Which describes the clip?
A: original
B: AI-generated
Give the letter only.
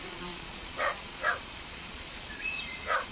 B